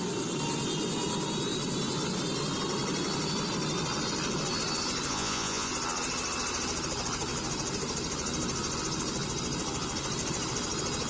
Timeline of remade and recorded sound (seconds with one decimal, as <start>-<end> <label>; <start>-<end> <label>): 0.0-5.1 recorded; 5.1-5.7 remade; 5.7-11.1 recorded